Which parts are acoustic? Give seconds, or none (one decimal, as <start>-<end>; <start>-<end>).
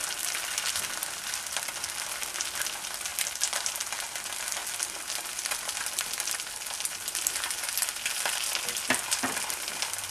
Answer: 0.0-10.1